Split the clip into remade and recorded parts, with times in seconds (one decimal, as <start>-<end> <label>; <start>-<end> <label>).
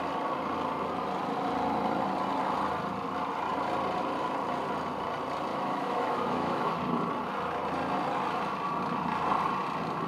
0.0-5.5 recorded; 5.5-6.8 remade; 6.8-10.1 recorded